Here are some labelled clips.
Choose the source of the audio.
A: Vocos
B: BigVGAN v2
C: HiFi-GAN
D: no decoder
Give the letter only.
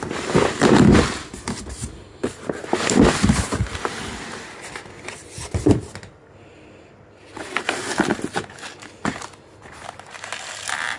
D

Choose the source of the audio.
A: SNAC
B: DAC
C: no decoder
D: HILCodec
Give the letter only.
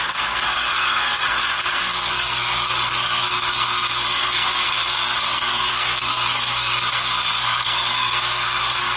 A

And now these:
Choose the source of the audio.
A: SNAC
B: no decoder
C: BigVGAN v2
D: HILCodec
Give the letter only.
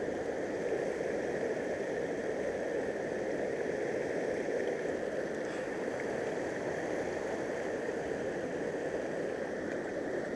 B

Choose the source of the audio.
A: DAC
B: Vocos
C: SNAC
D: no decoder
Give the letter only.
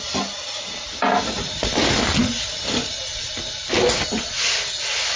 D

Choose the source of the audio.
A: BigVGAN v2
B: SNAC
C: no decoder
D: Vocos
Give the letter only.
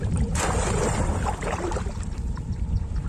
A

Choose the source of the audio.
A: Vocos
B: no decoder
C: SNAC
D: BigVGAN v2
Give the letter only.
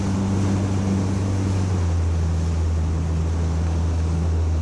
B